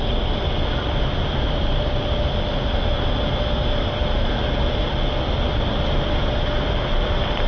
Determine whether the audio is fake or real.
real